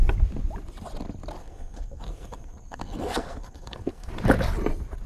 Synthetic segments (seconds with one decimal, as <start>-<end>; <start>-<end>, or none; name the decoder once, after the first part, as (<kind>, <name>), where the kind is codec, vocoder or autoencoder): 1.4-4.1 (codec, SNAC)